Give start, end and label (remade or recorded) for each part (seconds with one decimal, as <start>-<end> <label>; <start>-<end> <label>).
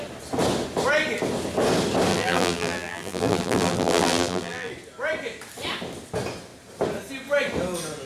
0.0-2.1 recorded; 2.1-4.7 remade; 4.7-8.1 recorded